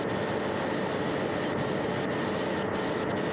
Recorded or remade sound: recorded